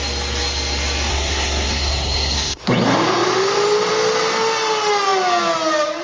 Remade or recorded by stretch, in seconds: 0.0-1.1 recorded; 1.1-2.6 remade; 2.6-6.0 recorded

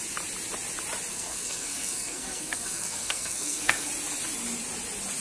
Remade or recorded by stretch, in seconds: 0.0-1.1 recorded; 1.1-3.9 remade; 3.9-5.2 recorded